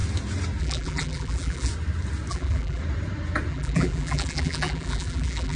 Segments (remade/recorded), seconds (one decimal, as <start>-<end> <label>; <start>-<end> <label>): 0.0-0.6 recorded; 0.6-1.7 remade; 1.7-2.3 recorded; 2.3-2.8 remade; 2.8-3.5 recorded; 3.5-5.6 remade